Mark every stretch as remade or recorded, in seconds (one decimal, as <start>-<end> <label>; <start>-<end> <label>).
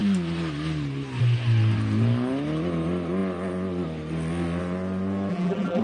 0.0-5.3 recorded; 5.3-5.8 remade